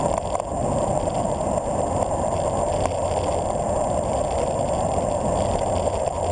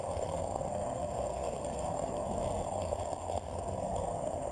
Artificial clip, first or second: second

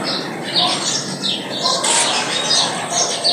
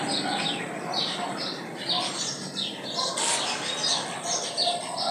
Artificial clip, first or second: second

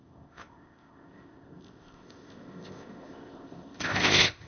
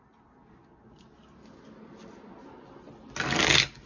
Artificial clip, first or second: first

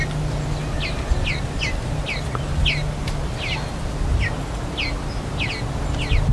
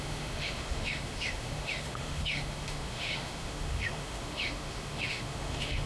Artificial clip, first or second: second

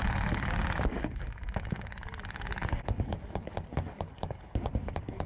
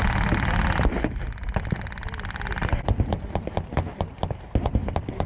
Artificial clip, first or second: first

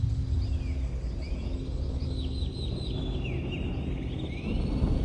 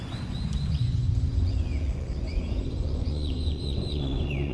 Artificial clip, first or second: second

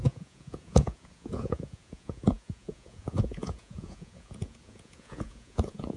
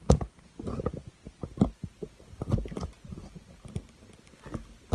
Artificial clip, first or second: first